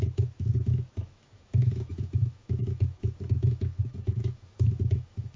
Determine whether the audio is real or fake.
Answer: fake